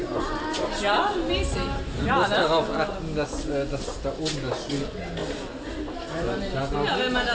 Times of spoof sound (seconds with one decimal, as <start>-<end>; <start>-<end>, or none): none